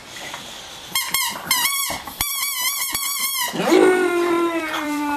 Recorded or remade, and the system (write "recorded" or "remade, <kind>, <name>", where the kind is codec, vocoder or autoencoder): remade, vocoder, BigVGAN v2